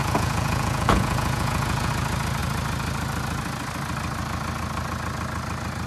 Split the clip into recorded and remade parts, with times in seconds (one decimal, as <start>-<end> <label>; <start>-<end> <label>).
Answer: 0.0-1.9 remade; 1.9-5.9 recorded